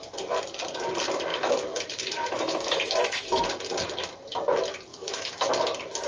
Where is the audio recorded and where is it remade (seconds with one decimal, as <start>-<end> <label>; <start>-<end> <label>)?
0.0-1.3 recorded; 1.3-3.5 remade; 3.5-4.9 recorded; 4.9-5.5 remade; 5.5-6.1 recorded